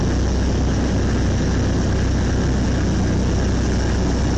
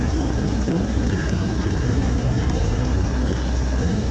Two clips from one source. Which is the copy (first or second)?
second